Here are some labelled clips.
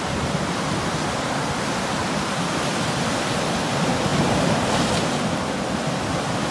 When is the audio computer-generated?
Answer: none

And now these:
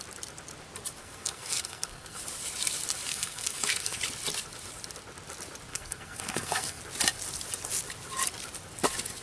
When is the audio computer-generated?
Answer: 1.0-2.2 (codec, SNAC); 3.1-4.0; 5.7-6.8

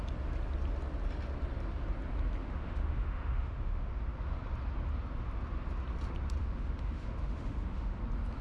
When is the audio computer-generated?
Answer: 2.4-3.9 (autoencoder, DAC-VAE); 6.4-8.0

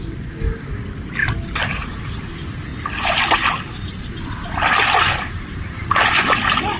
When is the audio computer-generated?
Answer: 5.2-6.8 (vocoder, BigVGAN v2)

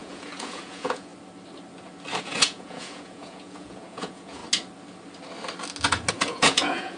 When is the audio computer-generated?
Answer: 0.0-1.1 (vocoder, Vocos); 2.2-4.4; 6.1-7.0

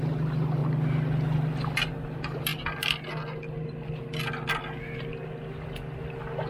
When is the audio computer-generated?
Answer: none

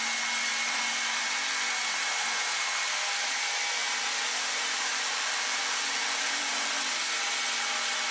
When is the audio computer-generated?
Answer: 3.8-6.9 (vocoder, BigVGAN v2)